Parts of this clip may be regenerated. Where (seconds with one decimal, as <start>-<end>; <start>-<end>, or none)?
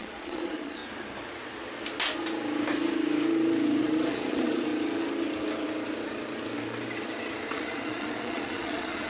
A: 0.0-0.8; 3.8-4.7; 7.5-9.1